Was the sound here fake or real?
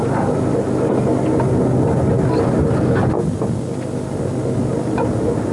real